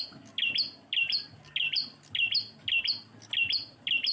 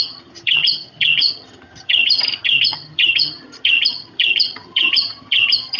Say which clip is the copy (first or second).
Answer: second